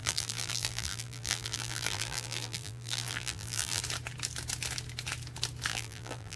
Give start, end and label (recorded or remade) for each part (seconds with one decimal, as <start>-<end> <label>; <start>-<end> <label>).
0.0-3.8 remade; 3.8-5.7 recorded; 5.7-6.4 remade

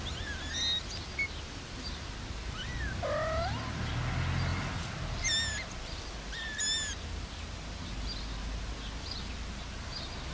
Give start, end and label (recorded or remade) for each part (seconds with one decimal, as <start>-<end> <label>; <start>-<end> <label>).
0.0-10.3 recorded

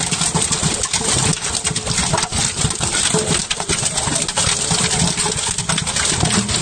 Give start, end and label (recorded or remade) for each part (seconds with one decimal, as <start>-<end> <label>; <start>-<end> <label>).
0.0-6.6 recorded

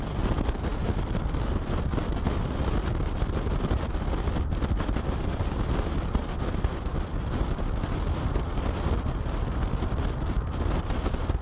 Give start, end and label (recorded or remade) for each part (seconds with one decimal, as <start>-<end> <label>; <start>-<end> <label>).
0.0-11.4 recorded

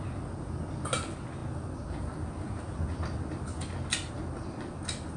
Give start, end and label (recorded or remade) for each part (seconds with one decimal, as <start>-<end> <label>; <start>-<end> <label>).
0.0-5.2 recorded

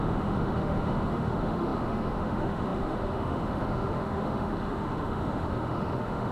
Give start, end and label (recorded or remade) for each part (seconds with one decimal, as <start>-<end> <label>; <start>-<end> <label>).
0.0-6.3 remade